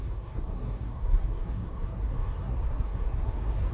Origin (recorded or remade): remade